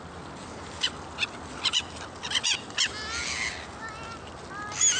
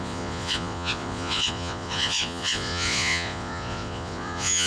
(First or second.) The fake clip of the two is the second